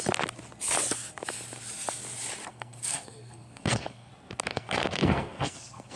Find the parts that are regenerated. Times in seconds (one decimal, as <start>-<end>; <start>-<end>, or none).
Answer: 2.5-4.1; 4.5-6.0